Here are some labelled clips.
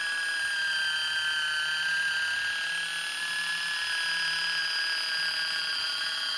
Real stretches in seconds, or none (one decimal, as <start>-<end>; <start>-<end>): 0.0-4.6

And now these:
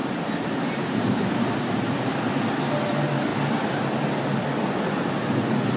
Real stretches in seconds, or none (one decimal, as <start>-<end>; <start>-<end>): 2.3-5.8

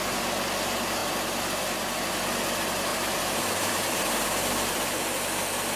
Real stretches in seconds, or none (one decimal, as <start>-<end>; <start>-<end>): 0.0-2.9; 5.0-5.8

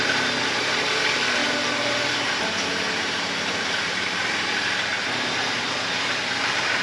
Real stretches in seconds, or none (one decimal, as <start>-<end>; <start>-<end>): 0.0-1.4; 5.5-6.8

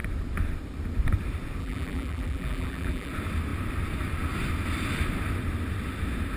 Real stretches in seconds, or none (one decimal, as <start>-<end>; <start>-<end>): 0.0-1.6; 3.1-6.4

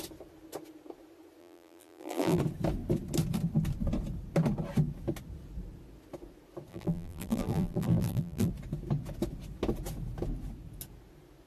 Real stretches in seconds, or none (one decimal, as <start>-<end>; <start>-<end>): 0.0-1.4; 2.4-6.7; 8.5-11.5